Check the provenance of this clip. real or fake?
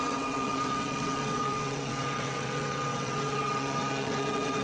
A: fake